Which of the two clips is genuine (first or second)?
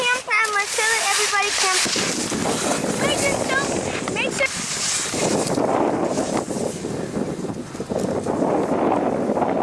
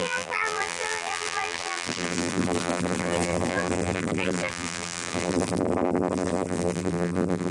first